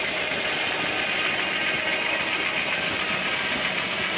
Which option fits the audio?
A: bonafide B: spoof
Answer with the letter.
A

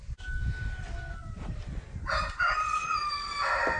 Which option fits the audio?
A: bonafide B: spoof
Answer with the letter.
A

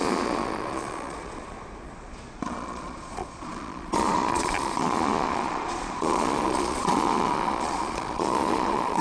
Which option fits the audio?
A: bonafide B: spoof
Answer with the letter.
B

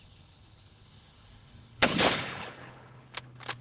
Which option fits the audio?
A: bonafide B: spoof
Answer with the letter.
B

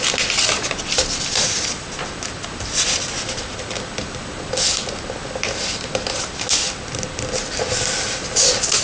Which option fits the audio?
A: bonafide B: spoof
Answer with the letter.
A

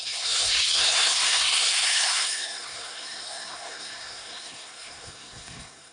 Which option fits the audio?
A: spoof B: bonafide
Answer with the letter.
A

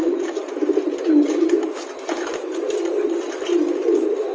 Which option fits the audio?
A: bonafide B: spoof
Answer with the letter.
A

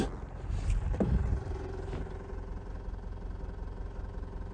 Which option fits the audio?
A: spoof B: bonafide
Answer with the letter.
B